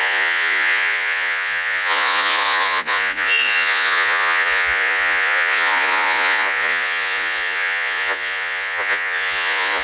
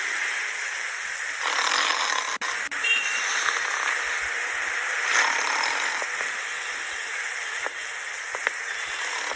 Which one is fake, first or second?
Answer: first